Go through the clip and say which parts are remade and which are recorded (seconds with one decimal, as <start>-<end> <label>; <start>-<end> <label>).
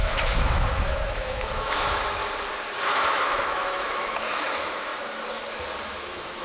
0.0-2.2 remade; 2.2-2.7 recorded; 2.7-4.9 remade; 4.9-5.8 recorded; 5.8-6.4 remade